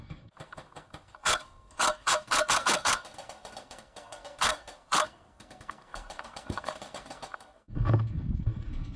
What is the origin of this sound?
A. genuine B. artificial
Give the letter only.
B